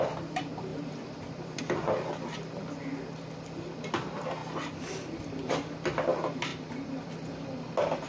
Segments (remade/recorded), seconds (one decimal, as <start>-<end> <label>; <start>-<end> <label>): 0.0-0.7 recorded; 0.7-1.6 remade; 1.6-6.5 recorded; 6.5-7.1 remade; 7.1-8.1 recorded

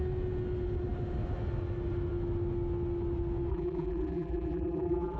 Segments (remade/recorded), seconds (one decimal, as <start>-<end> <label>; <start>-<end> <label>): 0.0-3.5 recorded; 3.5-5.2 remade

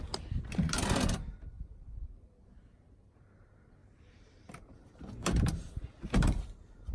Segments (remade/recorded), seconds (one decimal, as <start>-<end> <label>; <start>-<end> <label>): 0.0-1.3 recorded; 1.3-2.3 remade; 2.3-3.8 recorded; 3.8-6.4 remade; 6.4-6.9 recorded

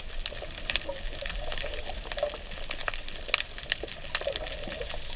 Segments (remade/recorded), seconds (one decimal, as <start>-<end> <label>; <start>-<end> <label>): 0.0-5.2 recorded

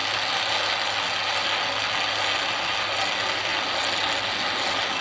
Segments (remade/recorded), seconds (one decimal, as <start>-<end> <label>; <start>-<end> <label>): 0.0-5.0 recorded

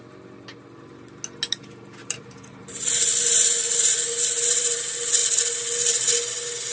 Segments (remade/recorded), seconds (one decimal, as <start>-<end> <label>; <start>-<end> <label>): 0.0-2.0 recorded; 2.0-4.6 remade; 4.6-6.7 recorded

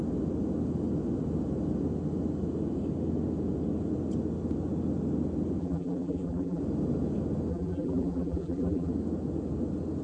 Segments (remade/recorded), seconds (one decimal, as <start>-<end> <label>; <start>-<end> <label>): 0.0-5.6 recorded; 5.6-6.6 remade; 6.6-7.5 recorded; 7.5-8.9 remade; 8.9-10.0 recorded